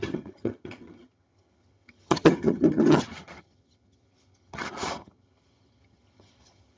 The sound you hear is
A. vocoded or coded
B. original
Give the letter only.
A